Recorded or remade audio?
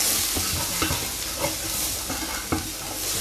recorded